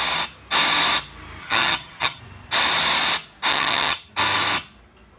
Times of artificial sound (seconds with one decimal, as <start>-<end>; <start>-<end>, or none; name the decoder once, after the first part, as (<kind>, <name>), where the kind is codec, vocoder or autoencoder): 1.4-2.2 (vocoder, HiFi-GAN); 3.5-4.1